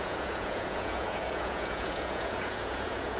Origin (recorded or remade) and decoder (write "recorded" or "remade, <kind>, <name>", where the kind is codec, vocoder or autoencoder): remade, vocoder, Vocos